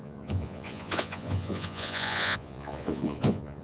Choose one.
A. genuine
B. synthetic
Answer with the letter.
B